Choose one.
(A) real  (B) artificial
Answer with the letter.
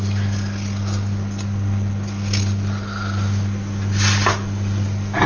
A